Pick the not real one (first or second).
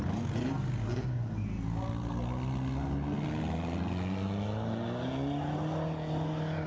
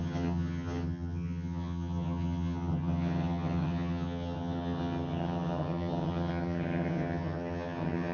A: second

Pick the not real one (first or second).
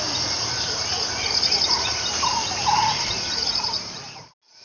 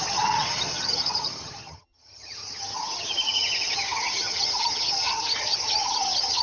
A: second